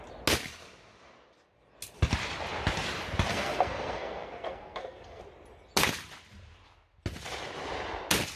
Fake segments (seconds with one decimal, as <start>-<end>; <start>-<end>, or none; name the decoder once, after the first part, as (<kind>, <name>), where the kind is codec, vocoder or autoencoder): 3.3-5.2 (codec, SNAC)